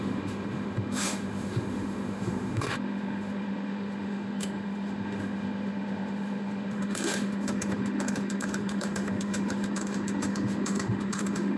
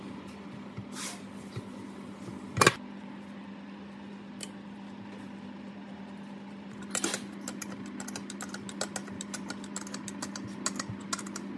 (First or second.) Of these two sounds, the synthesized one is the first